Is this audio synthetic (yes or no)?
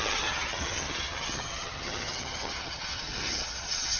yes